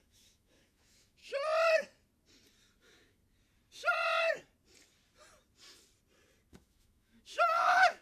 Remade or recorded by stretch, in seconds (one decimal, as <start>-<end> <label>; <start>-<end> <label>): 0.0-1.2 remade; 1.2-2.8 recorded; 2.8-3.2 remade; 3.2-6.5 recorded; 6.5-8.0 remade